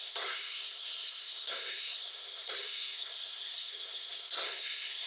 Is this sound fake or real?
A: fake